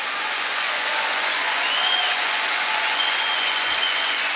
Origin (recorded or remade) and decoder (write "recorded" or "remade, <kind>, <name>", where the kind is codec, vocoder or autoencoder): remade, vocoder, Vocos